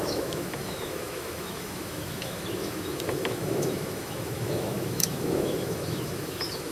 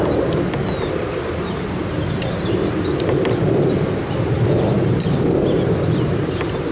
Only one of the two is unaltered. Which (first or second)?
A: second